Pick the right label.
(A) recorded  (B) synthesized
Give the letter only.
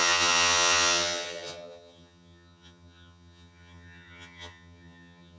B